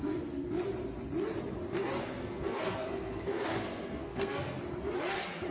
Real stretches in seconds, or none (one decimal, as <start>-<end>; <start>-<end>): 0.5-2.2; 4.6-5.5